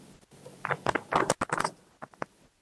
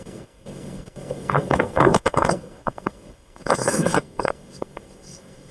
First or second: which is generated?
second